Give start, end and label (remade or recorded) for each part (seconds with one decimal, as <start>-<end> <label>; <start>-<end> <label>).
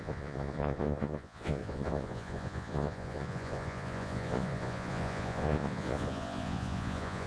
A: 0.0-7.3 remade